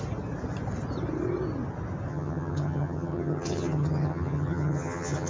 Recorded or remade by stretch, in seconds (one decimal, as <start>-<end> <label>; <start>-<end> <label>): 0.0-2.1 recorded; 2.1-5.3 remade